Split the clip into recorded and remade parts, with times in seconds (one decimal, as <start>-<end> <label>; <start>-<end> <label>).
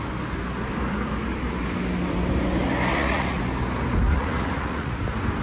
0.0-2.9 recorded; 2.9-3.4 remade; 3.4-4.1 recorded; 4.1-5.0 remade; 5.0-5.4 recorded